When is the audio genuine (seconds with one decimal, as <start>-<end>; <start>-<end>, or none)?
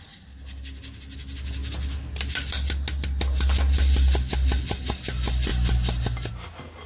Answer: 0.0-6.9